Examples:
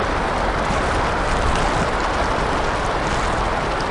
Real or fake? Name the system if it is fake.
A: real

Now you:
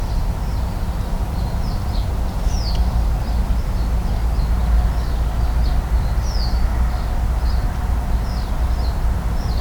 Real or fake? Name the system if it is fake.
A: real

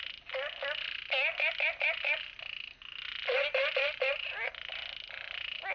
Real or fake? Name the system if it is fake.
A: real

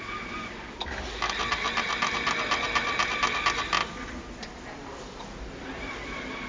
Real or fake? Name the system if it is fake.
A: real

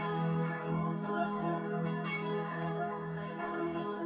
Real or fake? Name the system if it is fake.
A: fake, codec, DAC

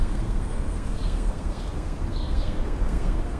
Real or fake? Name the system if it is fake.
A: fake, codec, SNAC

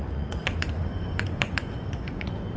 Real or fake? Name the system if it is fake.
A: fake, vocoder, Vocos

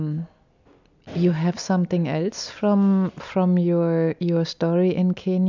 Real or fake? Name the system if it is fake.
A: real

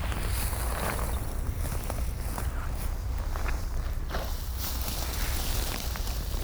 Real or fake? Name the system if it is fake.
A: real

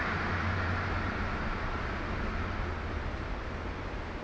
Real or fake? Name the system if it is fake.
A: fake, vocoder, BigVGAN v2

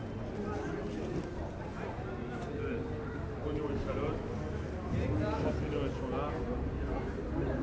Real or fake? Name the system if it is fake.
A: real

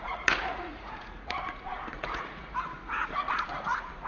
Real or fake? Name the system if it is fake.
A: fake, vocoder, Vocos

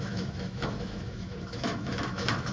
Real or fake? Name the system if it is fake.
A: fake, autoencoder, DAC-VAE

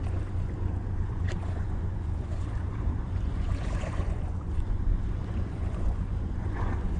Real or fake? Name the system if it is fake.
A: fake, vocoder, Vocos